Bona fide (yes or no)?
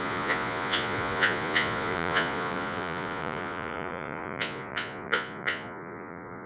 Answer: no